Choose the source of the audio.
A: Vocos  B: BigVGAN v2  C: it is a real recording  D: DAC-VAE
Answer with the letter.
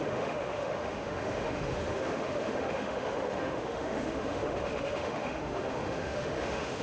D